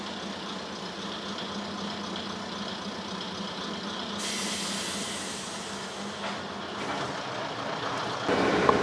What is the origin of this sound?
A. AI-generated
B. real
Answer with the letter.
B